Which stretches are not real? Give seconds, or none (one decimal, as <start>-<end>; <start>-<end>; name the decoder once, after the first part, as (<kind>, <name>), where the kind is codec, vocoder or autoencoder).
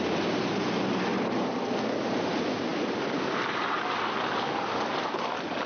none